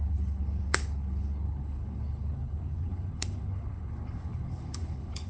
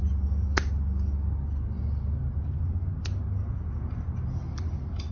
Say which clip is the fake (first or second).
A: first